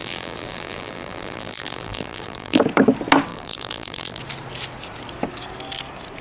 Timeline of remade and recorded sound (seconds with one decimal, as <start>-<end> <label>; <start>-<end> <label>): 0.0-2.6 remade; 2.6-3.3 recorded; 3.3-4.2 remade; 4.2-6.2 recorded